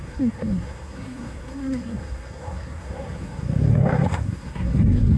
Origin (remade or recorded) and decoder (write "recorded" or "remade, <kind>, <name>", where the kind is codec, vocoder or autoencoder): remade, codec, SNAC